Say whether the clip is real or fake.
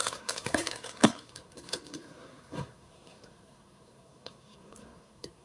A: fake